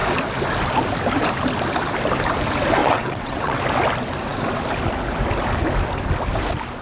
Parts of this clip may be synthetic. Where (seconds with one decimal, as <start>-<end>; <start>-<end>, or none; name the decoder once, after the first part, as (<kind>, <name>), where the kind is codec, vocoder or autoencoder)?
2.8-3.6 (vocoder, WaveNeXt)